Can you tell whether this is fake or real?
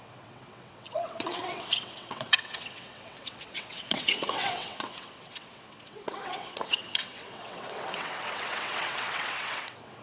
fake